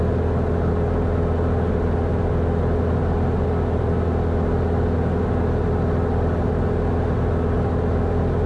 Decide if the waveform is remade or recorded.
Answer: recorded